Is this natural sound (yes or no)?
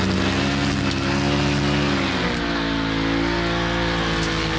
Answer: yes